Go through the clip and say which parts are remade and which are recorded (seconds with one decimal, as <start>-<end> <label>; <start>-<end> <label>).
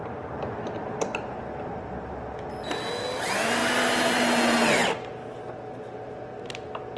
0.0-7.0 recorded